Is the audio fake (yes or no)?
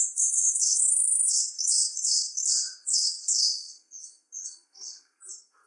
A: yes